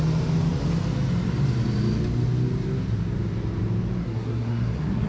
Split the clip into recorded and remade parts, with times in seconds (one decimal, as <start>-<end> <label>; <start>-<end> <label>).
0.0-4.0 recorded; 4.0-5.1 remade